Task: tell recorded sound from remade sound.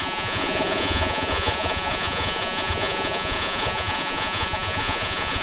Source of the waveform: remade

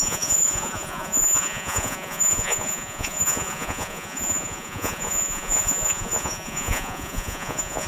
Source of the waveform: remade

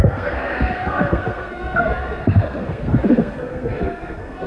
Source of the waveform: remade